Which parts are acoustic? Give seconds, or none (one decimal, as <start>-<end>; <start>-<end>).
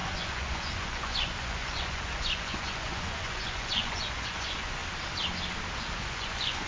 4.8-5.7